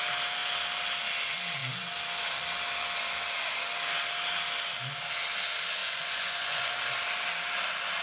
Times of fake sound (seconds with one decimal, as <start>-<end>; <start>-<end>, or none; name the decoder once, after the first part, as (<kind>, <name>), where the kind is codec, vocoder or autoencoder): 5.8-6.7 (vocoder, Vocos)